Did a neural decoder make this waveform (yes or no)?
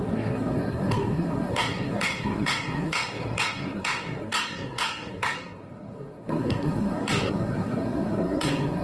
yes